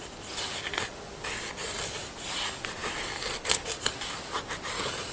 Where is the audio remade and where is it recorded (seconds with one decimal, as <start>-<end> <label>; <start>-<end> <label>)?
0.0-5.1 recorded